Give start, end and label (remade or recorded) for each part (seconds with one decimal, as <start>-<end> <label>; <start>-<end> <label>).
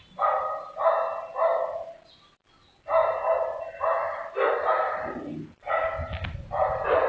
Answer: 0.0-7.1 recorded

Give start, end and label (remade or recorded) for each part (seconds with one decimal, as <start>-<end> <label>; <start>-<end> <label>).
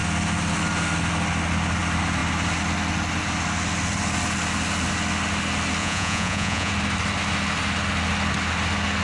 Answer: 0.0-5.8 recorded; 5.8-6.7 remade; 6.7-9.0 recorded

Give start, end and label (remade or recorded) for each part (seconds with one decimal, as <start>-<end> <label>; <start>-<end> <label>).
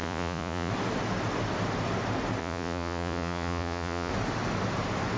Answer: 0.0-0.7 remade; 0.7-2.4 recorded; 2.4-4.1 remade; 4.1-5.2 recorded